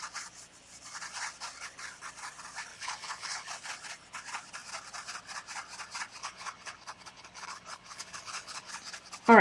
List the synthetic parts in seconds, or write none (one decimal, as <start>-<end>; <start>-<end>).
2.7-3.5; 6.2-8.7